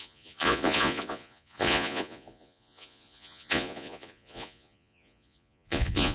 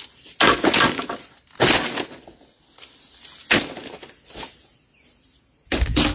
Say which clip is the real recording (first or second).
second